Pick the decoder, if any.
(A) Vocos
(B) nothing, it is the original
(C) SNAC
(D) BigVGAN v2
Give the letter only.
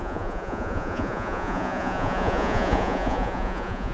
A